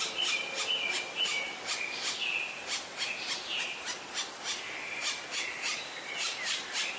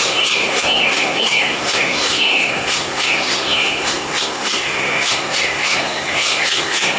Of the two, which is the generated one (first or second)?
second